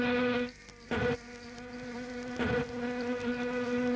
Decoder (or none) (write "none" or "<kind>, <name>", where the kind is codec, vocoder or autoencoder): none